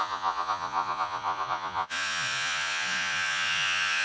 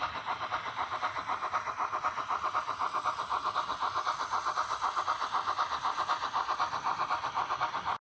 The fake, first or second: first